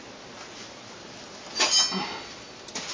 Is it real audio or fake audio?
real